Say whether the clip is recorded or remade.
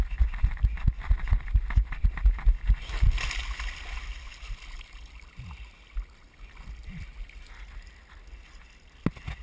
recorded